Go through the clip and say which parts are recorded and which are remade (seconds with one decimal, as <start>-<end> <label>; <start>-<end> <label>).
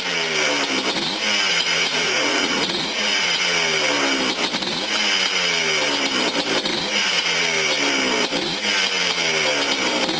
0.0-1.5 recorded; 1.5-3.4 remade; 3.4-6.8 recorded; 6.8-7.4 remade; 7.4-10.2 recorded